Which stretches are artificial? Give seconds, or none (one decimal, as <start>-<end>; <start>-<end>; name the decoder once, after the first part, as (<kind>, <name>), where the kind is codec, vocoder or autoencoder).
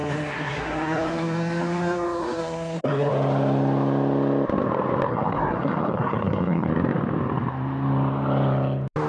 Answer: 0.0-3.1 (codec, SNAC); 5.1-6.7